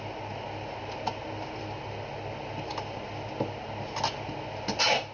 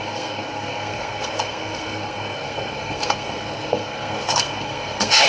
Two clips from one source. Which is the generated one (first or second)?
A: second